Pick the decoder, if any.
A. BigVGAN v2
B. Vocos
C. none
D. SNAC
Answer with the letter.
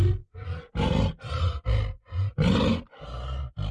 C